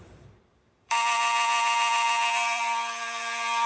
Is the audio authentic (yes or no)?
no